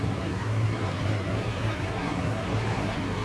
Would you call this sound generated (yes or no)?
yes